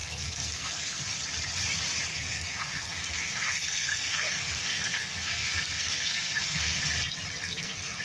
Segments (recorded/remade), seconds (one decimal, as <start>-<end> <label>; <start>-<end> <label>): 0.0-1.1 remade; 1.1-2.1 recorded; 2.1-6.8 remade; 6.8-7.4 recorded; 7.4-8.0 remade